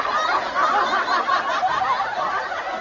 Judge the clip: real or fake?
real